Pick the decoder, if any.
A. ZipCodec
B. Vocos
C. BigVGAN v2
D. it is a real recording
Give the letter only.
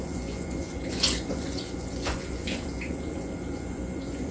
B